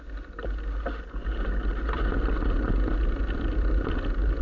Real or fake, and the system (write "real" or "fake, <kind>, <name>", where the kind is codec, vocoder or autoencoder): real